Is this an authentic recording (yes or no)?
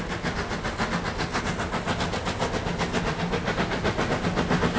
yes